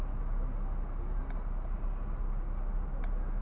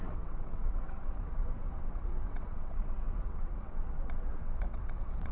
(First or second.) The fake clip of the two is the second